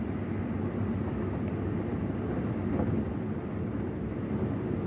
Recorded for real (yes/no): yes